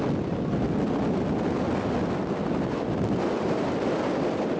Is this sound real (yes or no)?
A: yes